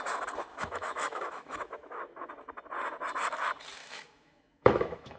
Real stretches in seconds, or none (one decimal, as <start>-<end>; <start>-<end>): 0.0-0.5; 2.3-3.8